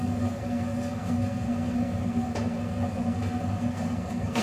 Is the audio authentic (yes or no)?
no